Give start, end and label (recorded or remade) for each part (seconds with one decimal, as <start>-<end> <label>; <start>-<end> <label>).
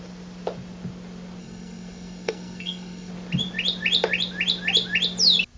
0.0-1.4 recorded; 1.4-3.1 remade; 3.1-5.6 recorded